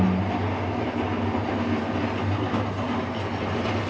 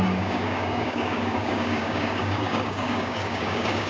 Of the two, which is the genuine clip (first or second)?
first